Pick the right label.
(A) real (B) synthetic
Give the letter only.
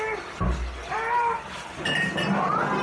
A